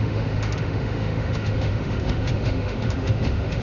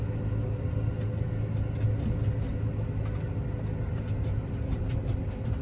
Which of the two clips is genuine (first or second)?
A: second